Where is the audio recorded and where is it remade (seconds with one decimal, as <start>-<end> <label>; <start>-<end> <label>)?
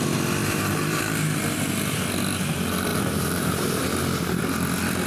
0.0-0.4 recorded; 0.4-1.0 remade; 1.0-2.9 recorded; 2.9-4.4 remade; 4.4-5.1 recorded